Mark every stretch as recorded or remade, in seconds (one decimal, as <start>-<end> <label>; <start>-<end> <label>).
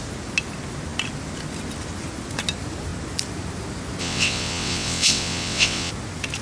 0.0-4.0 recorded; 4.0-5.9 remade; 5.9-6.4 recorded